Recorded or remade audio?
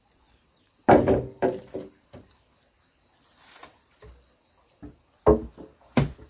recorded